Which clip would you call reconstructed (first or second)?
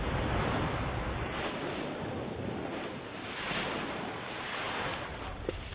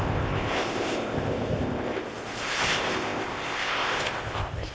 second